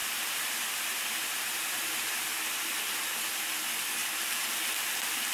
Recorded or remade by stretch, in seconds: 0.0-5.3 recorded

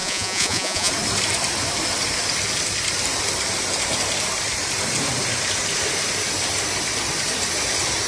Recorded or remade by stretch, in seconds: 0.0-0.9 remade; 0.9-8.1 recorded